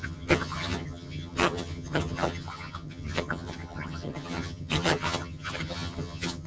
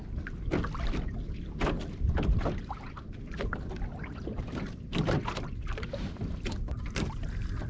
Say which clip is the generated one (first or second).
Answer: first